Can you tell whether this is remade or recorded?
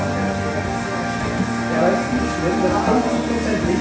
recorded